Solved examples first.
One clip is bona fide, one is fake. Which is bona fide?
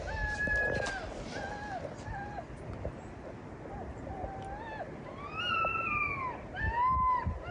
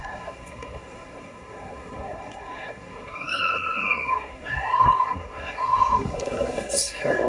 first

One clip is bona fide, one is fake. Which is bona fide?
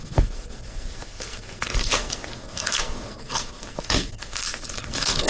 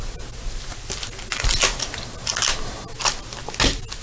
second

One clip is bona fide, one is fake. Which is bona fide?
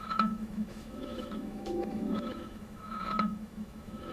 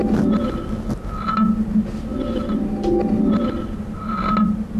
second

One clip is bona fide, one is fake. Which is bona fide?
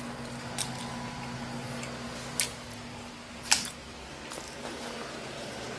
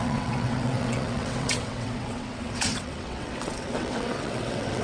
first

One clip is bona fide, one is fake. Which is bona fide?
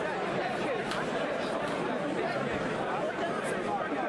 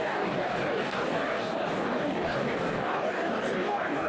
first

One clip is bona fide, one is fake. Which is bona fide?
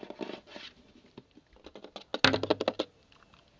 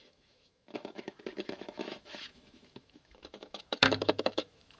first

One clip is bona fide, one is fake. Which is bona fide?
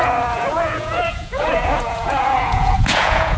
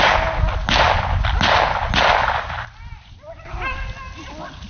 second